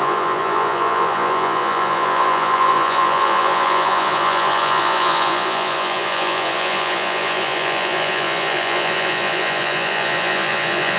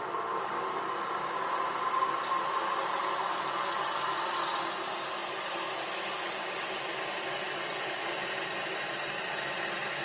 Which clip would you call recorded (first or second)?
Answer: second